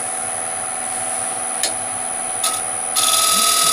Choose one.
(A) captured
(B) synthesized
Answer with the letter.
A